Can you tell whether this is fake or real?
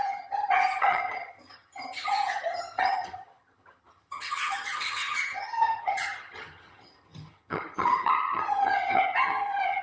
fake